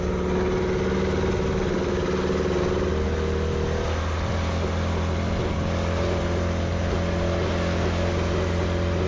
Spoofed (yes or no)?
no